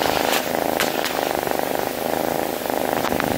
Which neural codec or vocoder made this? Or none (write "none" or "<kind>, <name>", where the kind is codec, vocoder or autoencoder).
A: none